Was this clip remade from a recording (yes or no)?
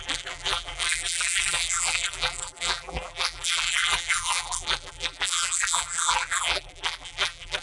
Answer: yes